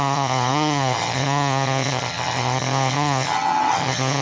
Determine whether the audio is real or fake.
fake